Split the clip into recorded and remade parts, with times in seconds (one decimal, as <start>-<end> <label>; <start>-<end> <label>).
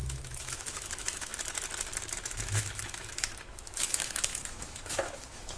0.0-1.3 remade; 1.3-2.2 recorded; 2.2-5.6 remade